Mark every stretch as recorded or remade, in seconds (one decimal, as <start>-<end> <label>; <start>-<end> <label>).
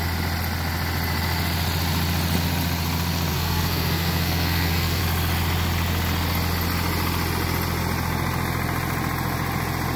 0.0-3.3 recorded; 3.3-5.0 remade; 5.0-10.0 recorded